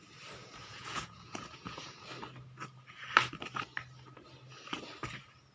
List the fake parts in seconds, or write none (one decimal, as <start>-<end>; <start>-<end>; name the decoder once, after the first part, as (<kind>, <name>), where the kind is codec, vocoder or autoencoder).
0.4-1.9 (vocoder, Vocos)